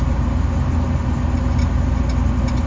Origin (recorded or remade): recorded